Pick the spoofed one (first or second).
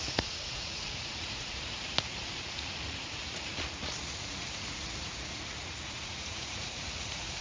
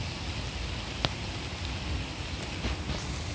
first